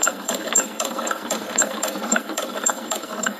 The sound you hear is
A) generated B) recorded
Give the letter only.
A